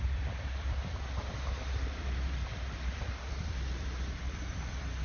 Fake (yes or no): yes